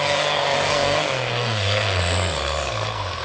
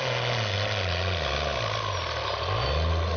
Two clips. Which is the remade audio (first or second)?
first